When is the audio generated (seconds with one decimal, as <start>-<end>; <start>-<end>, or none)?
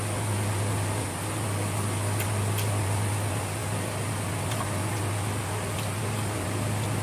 none